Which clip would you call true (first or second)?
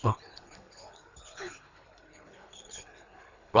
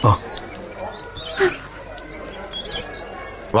second